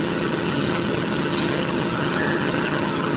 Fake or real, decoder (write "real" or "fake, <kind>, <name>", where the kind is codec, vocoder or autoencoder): fake, vocoder, HiFi-GAN